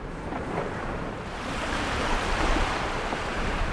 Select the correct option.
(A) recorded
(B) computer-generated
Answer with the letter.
B